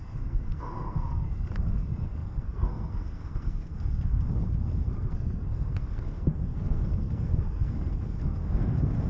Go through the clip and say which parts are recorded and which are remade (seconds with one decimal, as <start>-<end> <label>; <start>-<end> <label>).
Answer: 0.0-9.1 remade